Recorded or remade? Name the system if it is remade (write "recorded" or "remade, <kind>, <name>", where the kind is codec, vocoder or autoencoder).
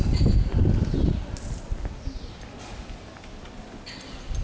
recorded